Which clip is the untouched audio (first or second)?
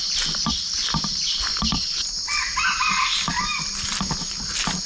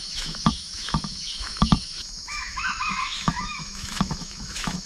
first